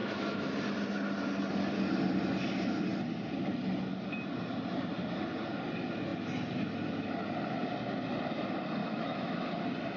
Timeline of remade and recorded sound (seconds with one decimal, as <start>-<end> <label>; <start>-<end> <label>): 0.0-0.5 remade; 0.5-8.8 recorded; 8.8-9.4 remade; 9.4-10.0 recorded